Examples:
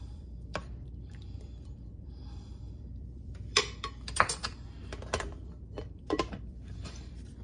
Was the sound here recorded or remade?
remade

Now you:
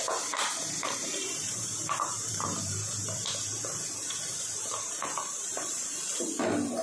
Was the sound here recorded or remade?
remade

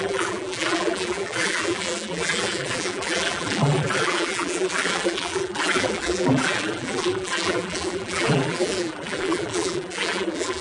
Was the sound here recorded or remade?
remade